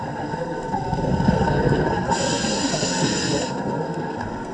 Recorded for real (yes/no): no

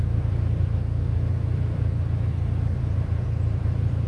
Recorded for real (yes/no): no